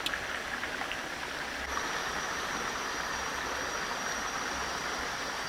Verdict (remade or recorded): recorded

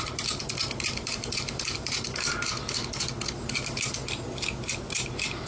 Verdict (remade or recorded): remade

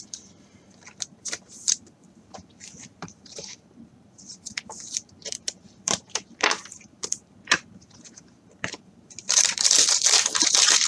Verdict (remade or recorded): remade